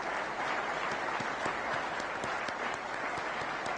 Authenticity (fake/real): real